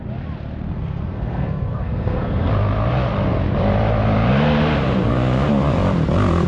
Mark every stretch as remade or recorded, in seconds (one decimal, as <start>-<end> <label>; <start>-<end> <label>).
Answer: 0.0-0.7 recorded; 0.7-2.5 remade; 2.5-6.5 recorded